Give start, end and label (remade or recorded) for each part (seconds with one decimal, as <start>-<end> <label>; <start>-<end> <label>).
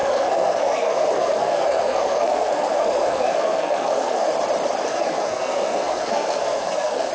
0.0-4.3 remade; 4.3-4.9 recorded; 4.9-7.1 remade